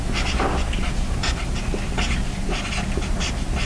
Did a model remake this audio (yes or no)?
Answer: no